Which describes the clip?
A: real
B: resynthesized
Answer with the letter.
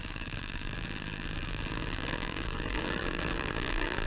B